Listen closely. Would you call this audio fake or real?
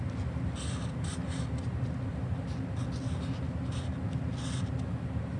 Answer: real